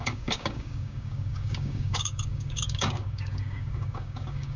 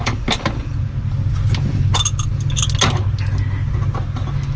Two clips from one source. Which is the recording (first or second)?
second